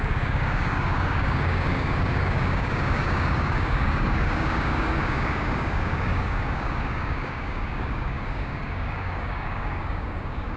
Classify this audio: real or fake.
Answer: fake